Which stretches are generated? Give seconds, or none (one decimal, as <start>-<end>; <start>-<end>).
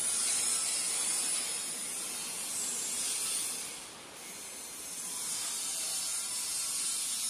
0.0-6.5